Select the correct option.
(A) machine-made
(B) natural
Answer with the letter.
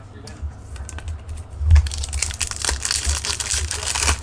B